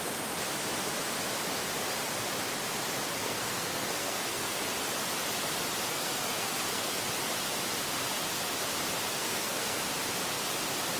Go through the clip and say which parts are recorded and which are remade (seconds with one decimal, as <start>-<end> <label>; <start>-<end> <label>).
0.0-3.2 recorded; 3.2-4.6 remade; 4.6-5.9 recorded; 5.9-7.0 remade; 7.0-9.1 recorded; 9.1-9.8 remade; 9.8-11.0 recorded